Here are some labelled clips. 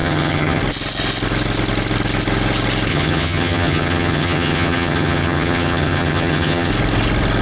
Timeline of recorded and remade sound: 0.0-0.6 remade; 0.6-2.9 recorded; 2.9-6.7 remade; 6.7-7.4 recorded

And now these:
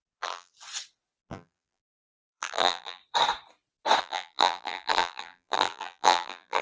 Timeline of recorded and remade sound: 0.0-0.5 remade; 0.5-1.2 recorded; 1.2-3.0 remade; 3.0-4.0 recorded; 4.0-6.6 remade

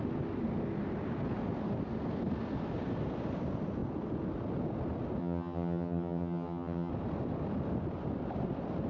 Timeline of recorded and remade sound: 0.0-5.2 recorded; 5.2-6.9 remade; 6.9-8.9 recorded

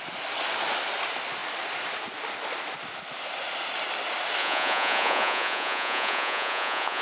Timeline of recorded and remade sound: 0.0-4.4 recorded; 4.4-7.0 remade

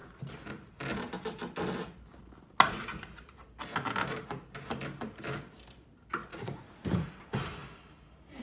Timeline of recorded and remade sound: 0.0-6.3 recorded; 6.3-7.1 remade; 7.1-8.4 recorded

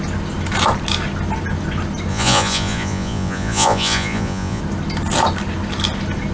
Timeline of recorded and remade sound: 0.0-2.1 recorded; 2.1-4.6 remade; 4.6-6.3 recorded

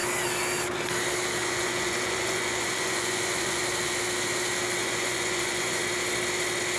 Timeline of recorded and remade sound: 0.0-1.4 recorded; 1.4-3.6 remade; 3.6-4.8 recorded; 4.8-5.8 remade; 5.8-6.8 recorded

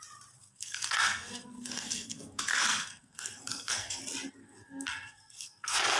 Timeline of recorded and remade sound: 0.0-0.4 recorded; 0.4-4.0 remade; 4.0-4.4 recorded; 4.4-6.0 remade